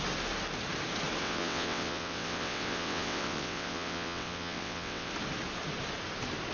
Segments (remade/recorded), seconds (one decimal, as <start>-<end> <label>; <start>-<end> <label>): 0.0-1.2 recorded; 1.2-5.1 remade; 5.1-6.5 recorded